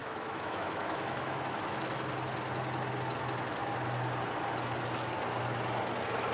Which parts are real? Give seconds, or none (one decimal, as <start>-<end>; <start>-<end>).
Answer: 1.9-6.3